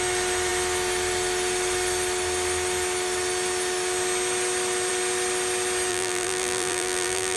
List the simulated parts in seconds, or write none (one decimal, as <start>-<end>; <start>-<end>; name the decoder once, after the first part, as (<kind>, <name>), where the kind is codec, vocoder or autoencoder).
5.9-7.4 (vocoder, BigVGAN v2)

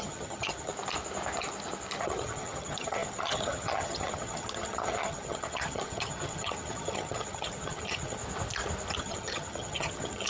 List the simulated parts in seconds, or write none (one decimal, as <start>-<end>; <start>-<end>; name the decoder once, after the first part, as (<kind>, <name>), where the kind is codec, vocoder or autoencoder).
0.0-0.7 (vocoder, HiFi-GAN); 2.0-8.2; 9.0-10.3

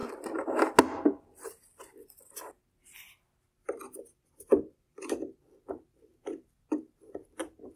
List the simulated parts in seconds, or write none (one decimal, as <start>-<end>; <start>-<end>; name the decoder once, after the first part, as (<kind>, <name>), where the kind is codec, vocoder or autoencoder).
4.7-6.1 (vocoder, BigVGAN v2); 6.8-7.8